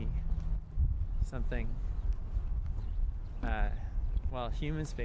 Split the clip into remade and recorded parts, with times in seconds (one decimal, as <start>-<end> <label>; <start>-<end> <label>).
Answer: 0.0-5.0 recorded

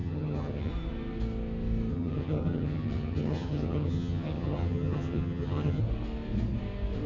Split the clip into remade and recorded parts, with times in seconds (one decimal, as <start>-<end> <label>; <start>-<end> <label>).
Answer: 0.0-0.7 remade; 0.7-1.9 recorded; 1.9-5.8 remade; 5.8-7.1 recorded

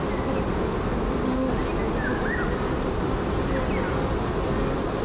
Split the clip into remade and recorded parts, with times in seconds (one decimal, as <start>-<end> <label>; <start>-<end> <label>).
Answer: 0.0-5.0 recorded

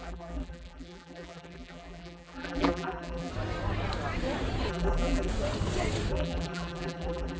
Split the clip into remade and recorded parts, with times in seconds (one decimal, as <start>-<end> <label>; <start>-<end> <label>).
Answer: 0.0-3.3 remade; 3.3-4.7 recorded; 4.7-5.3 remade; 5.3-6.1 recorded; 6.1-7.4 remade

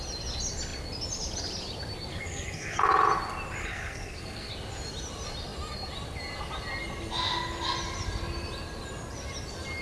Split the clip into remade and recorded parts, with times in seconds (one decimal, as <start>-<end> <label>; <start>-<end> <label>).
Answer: 0.0-2.1 recorded; 2.1-2.8 remade; 2.8-3.6 recorded; 3.6-4.5 remade; 4.5-9.8 recorded